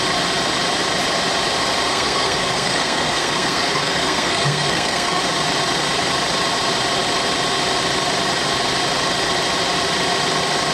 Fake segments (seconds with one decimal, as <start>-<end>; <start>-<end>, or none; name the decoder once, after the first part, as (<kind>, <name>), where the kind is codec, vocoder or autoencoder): 1.9-5.2 (codec, SNAC)